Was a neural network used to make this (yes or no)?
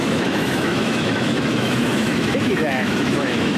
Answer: yes